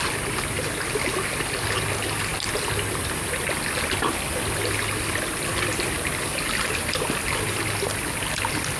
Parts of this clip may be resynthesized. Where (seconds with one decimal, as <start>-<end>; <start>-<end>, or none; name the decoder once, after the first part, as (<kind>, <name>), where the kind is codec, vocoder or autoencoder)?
none

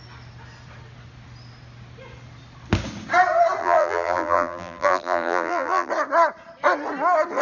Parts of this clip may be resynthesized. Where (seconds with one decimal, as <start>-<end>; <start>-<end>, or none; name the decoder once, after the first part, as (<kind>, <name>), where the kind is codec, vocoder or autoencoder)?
3.6-5.9 (vocoder, BigVGAN v2)

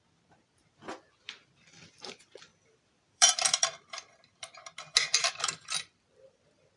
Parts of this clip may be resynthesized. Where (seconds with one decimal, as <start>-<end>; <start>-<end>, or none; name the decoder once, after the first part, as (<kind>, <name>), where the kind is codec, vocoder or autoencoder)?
2.5-4.6 (vocoder, BigVGAN v2); 5.2-6.8

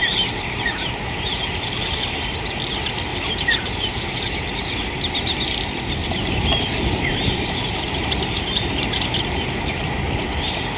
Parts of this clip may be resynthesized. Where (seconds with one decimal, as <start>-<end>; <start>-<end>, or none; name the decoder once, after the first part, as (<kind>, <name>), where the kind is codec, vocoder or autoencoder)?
0.0-2.4 (vocoder, BigVGAN v2); 3.1-4.8; 6.0-9.7

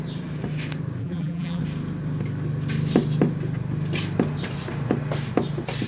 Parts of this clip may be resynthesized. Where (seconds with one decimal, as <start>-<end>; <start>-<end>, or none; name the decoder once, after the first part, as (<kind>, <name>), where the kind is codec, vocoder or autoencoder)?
1.0-1.6 (vocoder, BigVGAN v2)